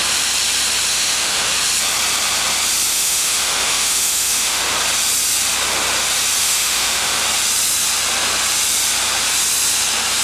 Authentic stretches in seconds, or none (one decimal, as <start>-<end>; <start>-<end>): 0.0-0.9; 1.5-2.9; 4.6-6.4; 7.2-10.2